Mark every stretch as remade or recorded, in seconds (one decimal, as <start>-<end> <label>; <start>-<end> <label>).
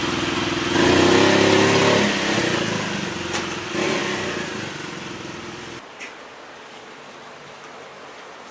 0.0-8.5 recorded